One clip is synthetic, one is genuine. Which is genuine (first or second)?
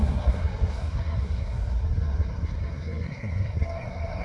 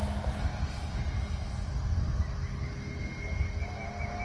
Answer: second